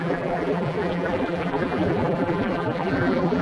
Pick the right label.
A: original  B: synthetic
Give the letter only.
B